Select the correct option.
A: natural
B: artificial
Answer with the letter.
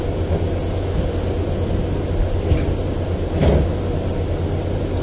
A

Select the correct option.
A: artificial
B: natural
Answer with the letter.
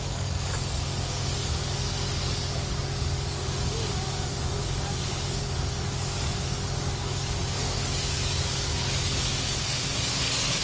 A